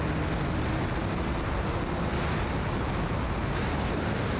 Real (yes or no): yes